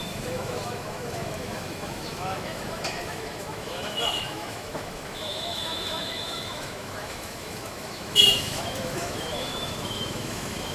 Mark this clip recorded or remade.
remade